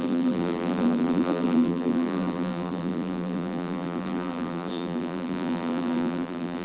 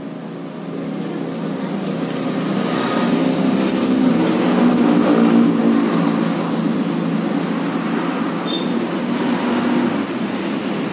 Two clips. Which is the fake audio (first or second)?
first